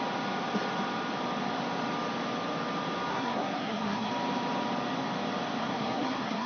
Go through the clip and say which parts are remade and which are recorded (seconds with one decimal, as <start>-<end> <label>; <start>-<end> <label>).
0.0-3.1 recorded; 3.1-4.1 remade; 4.1-5.6 recorded; 5.6-6.5 remade